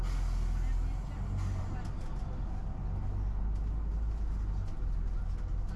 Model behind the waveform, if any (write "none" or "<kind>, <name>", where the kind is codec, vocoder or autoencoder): none